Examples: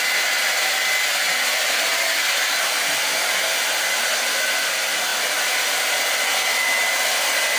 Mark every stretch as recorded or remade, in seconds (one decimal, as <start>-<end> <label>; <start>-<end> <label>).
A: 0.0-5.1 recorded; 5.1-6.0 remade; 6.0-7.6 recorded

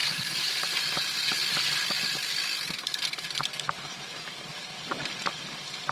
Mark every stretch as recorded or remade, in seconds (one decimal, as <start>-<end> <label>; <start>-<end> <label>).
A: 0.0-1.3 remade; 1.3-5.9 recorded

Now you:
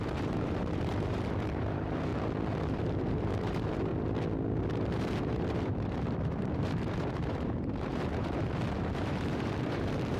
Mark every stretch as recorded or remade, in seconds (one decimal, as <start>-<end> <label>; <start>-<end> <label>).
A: 0.0-2.1 remade; 2.1-2.7 recorded; 2.7-3.9 remade; 3.9-4.6 recorded; 4.6-10.2 remade

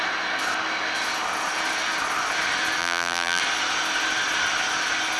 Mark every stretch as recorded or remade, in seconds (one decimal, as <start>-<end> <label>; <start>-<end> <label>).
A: 0.0-2.8 recorded; 2.8-3.4 remade; 3.4-5.2 recorded

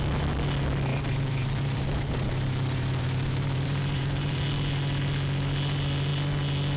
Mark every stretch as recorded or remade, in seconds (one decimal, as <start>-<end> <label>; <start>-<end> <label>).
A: 0.0-0.9 recorded; 0.9-4.4 remade; 4.4-6.8 recorded

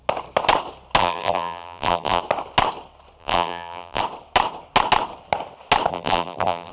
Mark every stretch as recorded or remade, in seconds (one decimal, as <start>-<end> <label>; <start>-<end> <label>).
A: 0.0-1.0 recorded; 1.0-2.2 remade; 2.2-3.2 recorded; 3.2-4.0 remade; 4.0-5.9 recorded; 5.9-6.7 remade